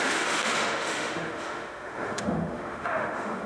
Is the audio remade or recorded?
remade